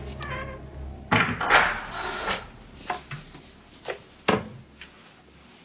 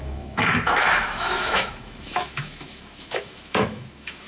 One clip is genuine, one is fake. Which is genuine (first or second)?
first